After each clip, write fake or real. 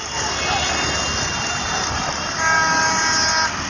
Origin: real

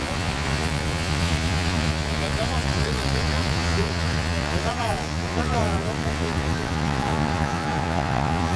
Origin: fake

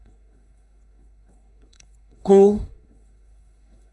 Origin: fake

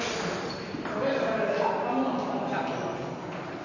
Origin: real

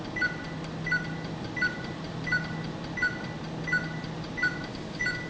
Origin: real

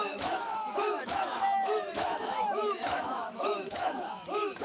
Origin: fake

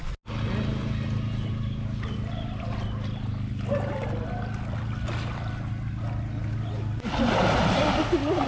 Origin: real